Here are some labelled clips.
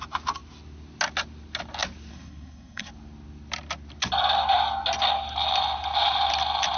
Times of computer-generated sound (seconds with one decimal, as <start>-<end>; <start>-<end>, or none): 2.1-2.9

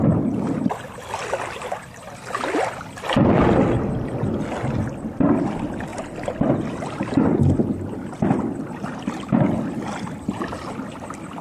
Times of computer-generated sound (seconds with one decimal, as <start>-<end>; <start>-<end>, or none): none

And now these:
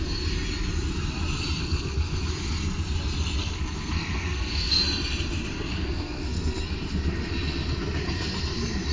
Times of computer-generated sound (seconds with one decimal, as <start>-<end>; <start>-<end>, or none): 1.6-2.3; 3.4-4.8; 5.7-6.7

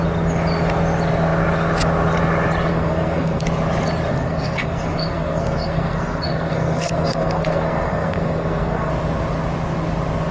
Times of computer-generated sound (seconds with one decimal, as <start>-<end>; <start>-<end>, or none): 2.7-3.4; 4.1-8.9

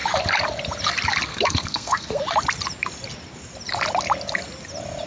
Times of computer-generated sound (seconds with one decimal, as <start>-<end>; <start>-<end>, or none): 1.3-2.2

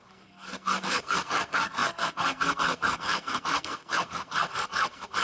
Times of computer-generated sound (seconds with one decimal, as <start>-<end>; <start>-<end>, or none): 0.0-5.2